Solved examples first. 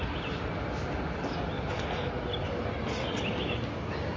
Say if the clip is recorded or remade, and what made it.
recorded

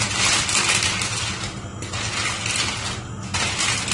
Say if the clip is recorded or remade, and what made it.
recorded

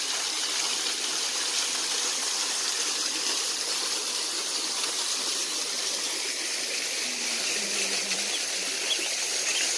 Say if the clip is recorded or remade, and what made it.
recorded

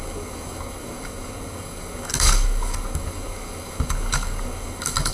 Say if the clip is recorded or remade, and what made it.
remade, codec, DAC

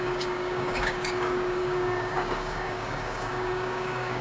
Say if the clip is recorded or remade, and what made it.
remade, codec, DAC